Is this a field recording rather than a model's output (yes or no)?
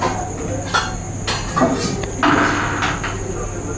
yes